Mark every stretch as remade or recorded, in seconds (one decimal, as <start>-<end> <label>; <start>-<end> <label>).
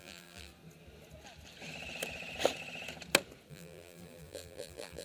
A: 0.0-0.5 remade; 0.5-3.5 recorded; 3.5-5.0 remade